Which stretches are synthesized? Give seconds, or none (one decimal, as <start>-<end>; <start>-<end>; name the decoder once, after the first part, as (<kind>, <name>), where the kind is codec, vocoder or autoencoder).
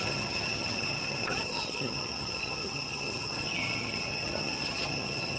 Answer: 0.0-5.4 (vocoder, HiFi-GAN)